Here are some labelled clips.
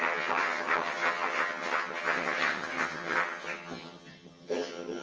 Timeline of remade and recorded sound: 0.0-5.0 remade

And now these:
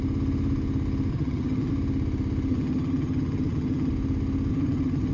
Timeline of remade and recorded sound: 0.0-1.1 recorded; 1.1-1.7 remade; 1.7-2.5 recorded; 2.5-3.9 remade; 3.9-4.5 recorded; 4.5-5.1 remade

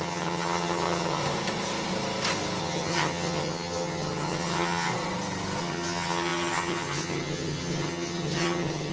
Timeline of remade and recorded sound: 0.0-1.2 remade; 1.2-2.6 recorded; 2.6-4.9 remade; 4.9-5.6 recorded; 5.6-8.9 remade

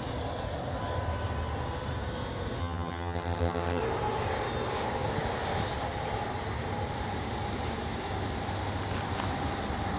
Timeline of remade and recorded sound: 0.0-2.6 recorded; 2.6-3.8 remade; 3.8-10.0 recorded

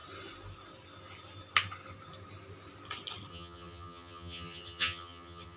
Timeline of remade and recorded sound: 0.0-3.3 recorded; 3.3-5.6 remade

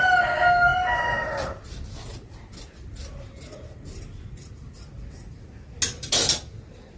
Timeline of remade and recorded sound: 0.0-7.0 recorded